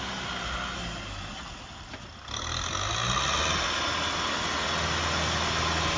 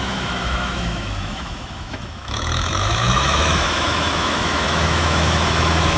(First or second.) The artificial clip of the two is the second